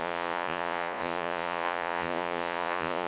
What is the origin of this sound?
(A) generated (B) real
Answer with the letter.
A